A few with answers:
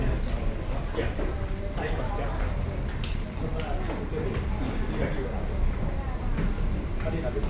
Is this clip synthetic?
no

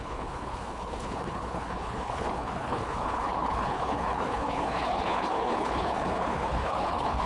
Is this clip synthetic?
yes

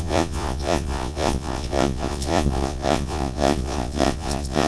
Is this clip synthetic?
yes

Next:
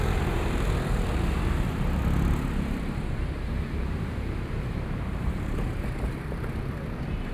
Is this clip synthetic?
yes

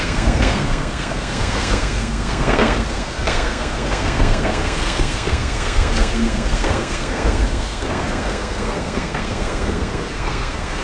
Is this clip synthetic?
yes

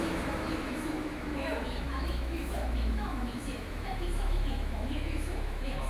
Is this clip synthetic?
yes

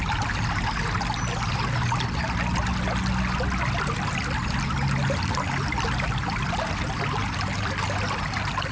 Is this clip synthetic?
no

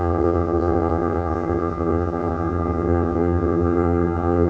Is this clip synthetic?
yes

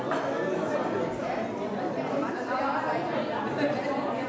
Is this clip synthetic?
no